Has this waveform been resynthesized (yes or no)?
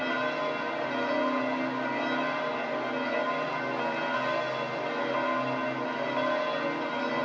no